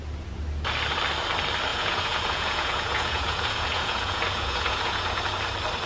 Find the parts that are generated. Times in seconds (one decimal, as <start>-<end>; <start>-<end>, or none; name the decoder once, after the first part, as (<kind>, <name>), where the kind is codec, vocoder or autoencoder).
1.7-5.2 (vocoder, Vocos)